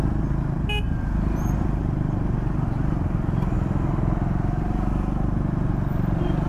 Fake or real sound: real